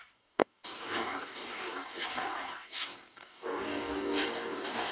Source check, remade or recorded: remade